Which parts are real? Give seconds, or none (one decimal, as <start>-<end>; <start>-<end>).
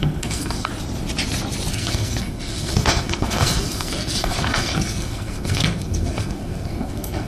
0.7-1.7